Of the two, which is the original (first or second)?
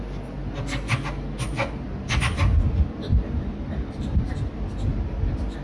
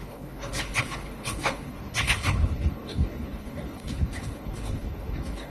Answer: first